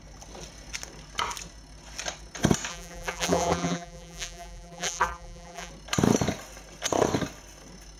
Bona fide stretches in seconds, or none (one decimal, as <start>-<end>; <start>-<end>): 0.0-2.7; 5.7-8.0